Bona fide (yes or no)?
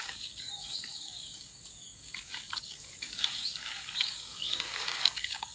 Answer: no